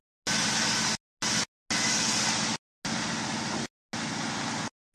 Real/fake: real